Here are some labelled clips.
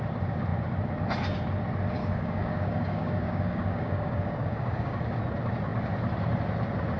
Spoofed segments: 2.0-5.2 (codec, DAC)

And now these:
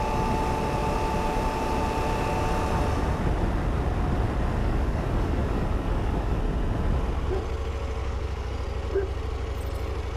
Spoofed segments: 4.6-6.4 (codec, DAC); 8.0-8.5

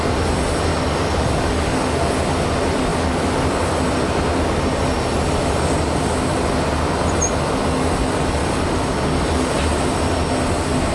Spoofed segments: 0.7-1.9 (codec, DAC); 8.4-9.5